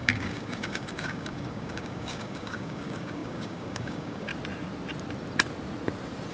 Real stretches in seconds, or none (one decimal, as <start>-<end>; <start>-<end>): 4.3-6.3